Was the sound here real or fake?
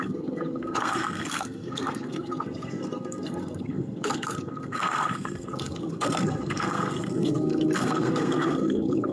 fake